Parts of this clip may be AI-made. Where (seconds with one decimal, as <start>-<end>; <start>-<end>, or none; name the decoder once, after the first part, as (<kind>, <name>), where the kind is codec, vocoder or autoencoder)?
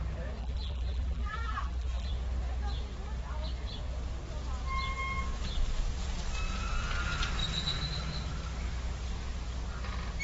0.4-2.1 (vocoder, BigVGAN v2)